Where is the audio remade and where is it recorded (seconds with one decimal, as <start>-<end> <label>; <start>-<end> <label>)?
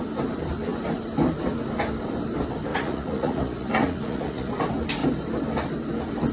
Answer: 0.0-2.7 recorded; 2.7-4.5 remade; 4.5-6.3 recorded